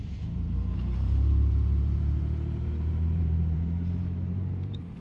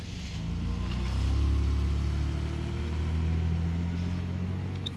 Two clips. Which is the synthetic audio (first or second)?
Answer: first